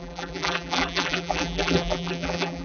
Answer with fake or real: fake